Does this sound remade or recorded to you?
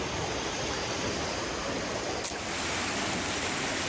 recorded